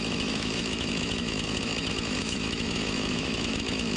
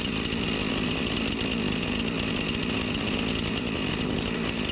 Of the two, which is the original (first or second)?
second